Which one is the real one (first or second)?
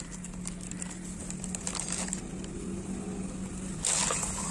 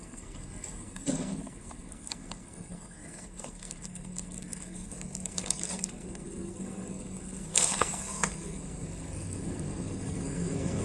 first